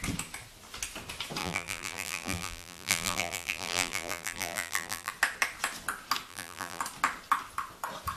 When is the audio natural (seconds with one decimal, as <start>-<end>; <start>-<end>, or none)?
0.0-1.4; 5.1-6.3; 6.8-8.2